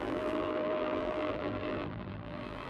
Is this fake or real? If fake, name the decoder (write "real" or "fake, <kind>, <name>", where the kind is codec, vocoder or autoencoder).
fake, vocoder, BigVGAN v2